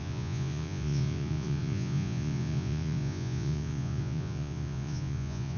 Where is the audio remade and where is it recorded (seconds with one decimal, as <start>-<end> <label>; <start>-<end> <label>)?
0.0-5.6 remade